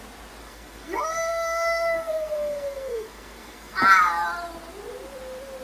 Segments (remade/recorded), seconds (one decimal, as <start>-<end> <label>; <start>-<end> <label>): 0.0-0.4 recorded; 0.4-3.8 remade; 3.8-5.6 recorded